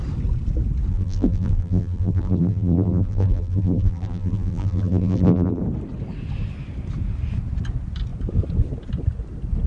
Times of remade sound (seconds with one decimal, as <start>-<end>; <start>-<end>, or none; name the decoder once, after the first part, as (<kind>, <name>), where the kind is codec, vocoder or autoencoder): 0.9-5.6 (vocoder, BigVGAN v2)